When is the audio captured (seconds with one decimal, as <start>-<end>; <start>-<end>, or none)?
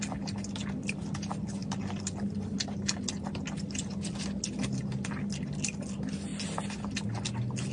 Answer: 0.0-7.7